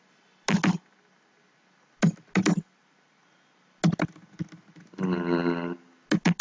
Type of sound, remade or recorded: recorded